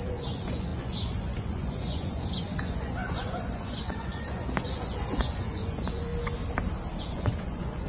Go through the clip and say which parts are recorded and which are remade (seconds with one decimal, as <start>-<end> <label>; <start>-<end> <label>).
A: 0.0-6.1 remade; 6.1-7.0 recorded; 7.0-7.9 remade